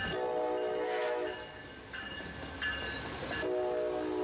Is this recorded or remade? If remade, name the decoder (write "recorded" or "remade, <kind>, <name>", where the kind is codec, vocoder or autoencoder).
recorded